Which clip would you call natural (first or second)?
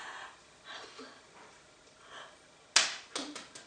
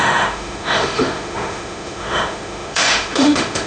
first